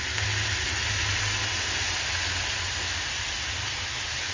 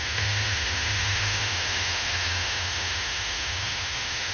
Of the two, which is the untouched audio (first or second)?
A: first